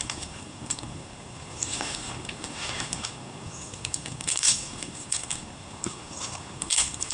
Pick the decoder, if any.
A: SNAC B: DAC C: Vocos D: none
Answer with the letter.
A